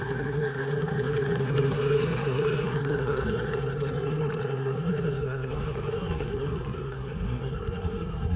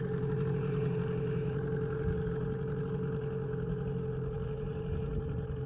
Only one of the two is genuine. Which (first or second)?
second